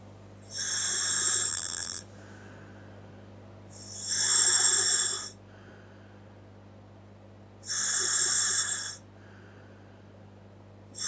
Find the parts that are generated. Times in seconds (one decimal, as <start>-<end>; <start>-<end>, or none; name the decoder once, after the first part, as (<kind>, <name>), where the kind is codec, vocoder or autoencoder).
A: 1.5-2.0 (vocoder, BigVGAN v2)